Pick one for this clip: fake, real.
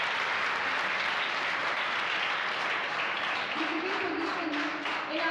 real